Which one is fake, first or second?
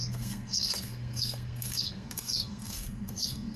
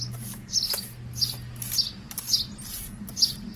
first